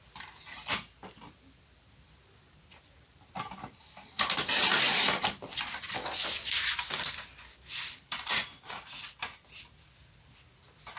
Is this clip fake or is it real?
real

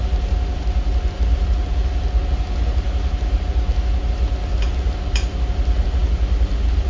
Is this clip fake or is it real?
real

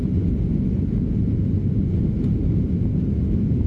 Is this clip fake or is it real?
real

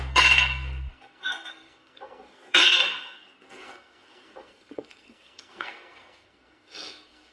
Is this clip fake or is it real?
fake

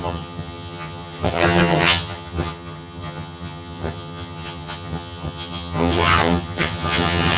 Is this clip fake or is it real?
fake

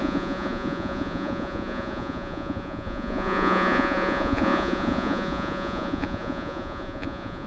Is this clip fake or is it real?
fake